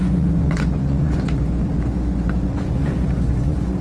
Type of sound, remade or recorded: remade